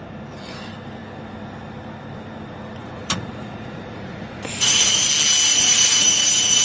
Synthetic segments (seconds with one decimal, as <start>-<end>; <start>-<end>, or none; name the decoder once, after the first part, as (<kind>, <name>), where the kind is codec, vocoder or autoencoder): 2.8-5.1 (vocoder, Vocos); 5.5-6.6